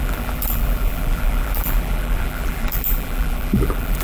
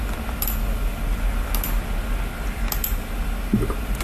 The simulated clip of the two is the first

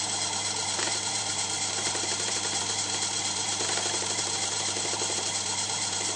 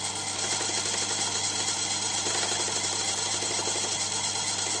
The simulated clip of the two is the first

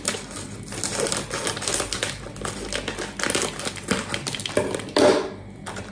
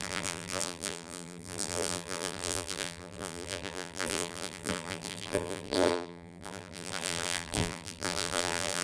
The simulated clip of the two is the second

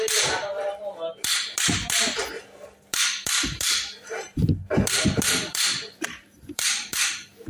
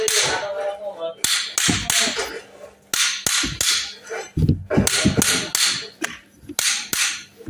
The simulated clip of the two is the first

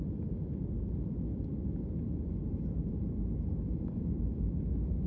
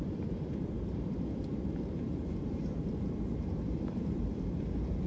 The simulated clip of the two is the second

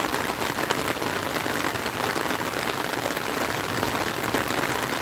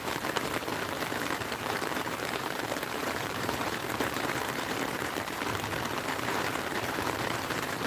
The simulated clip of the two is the second